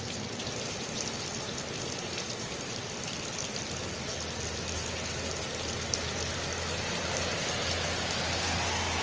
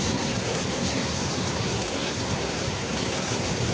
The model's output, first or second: second